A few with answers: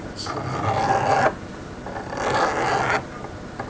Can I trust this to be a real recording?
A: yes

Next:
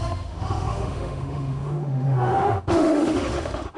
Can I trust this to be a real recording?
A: no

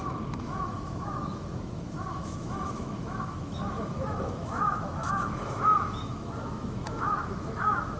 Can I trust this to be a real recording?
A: no